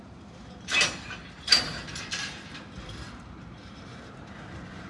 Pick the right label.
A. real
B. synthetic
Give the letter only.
B